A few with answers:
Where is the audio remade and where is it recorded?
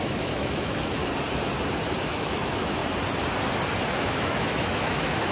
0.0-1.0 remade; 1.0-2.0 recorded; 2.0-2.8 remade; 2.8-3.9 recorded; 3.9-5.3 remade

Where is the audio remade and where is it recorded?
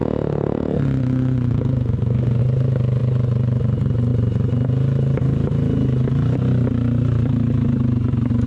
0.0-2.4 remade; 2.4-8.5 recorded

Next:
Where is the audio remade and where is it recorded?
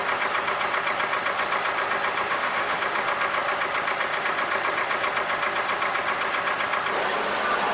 0.0-2.3 recorded; 2.3-2.8 remade; 2.8-7.7 recorded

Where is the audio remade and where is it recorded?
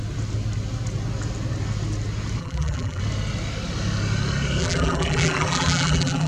0.0-2.4 recorded; 2.4-3.0 remade; 3.0-4.6 recorded; 4.6-6.3 remade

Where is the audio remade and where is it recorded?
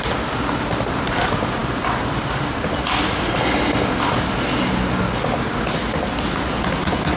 0.0-7.2 recorded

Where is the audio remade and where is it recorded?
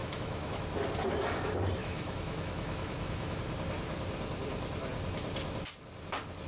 0.0-0.6 remade; 0.6-1.8 recorded; 1.8-3.4 remade; 3.4-6.5 recorded